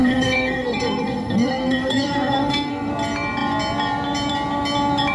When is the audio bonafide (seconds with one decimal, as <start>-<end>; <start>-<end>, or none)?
2.9-5.1